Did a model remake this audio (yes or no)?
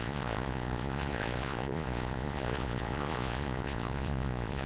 yes